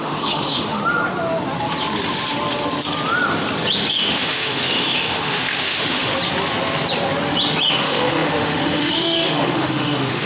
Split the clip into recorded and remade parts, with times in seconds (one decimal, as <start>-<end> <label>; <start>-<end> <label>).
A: 0.0-0.8 remade; 0.8-3.9 recorded; 3.9-6.1 remade; 6.1-7.7 recorded; 7.7-10.3 remade